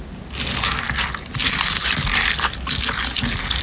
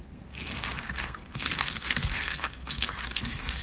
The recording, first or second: first